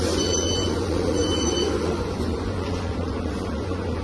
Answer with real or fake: fake